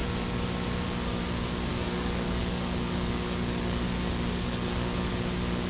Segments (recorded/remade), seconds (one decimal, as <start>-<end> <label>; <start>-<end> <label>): 0.0-1.7 recorded; 1.7-5.1 remade; 5.1-5.7 recorded